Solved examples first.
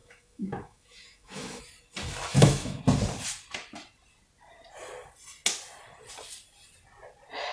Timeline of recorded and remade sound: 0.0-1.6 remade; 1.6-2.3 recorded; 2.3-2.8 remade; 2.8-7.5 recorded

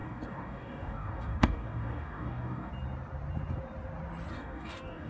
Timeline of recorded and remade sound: 0.0-2.7 remade; 2.7-4.3 recorded; 4.3-5.1 remade

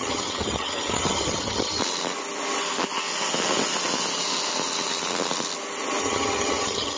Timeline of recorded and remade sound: 0.0-1.8 remade; 1.8-6.0 recorded; 6.0-7.0 remade

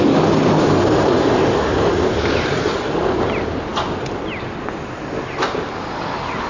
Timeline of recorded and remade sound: 0.0-6.5 recorded